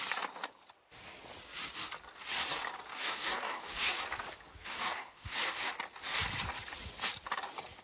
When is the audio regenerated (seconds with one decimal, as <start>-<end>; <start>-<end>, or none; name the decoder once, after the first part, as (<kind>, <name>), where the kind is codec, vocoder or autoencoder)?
2.9-4.0 (codec, DAC); 4.6-5.7